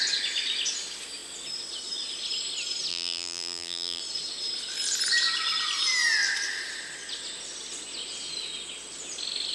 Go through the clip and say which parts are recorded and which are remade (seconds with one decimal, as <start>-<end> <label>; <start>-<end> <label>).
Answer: 0.0-2.9 recorded; 2.9-4.0 remade; 4.0-9.5 recorded